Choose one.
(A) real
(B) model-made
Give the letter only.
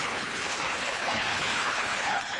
B